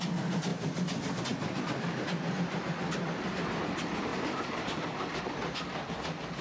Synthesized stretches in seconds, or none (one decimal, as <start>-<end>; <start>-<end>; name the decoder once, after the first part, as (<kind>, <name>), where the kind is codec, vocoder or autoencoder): 4.1-5.2 (vocoder, BigVGAN v2)